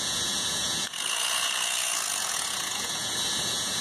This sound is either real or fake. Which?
fake